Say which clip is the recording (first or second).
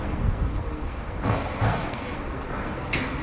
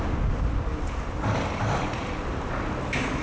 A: second